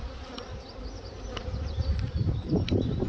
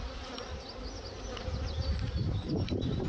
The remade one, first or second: first